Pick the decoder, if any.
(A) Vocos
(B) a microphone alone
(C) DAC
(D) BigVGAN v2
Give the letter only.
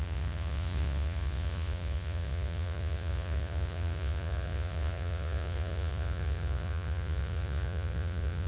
A